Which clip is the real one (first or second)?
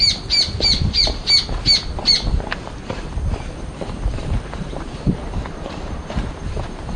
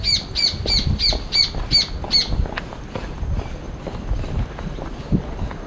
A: second